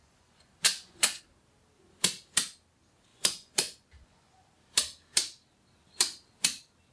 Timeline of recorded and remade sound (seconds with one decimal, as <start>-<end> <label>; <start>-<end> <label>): 0.0-1.2 remade; 1.2-3.1 recorded; 3.1-4.5 remade; 4.5-6.9 recorded